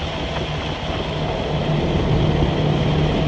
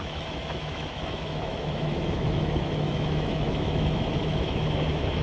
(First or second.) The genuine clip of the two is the first